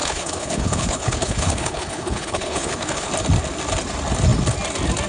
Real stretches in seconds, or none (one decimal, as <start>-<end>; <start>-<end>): 3.1-5.1